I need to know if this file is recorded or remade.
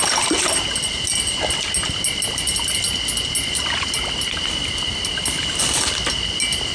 recorded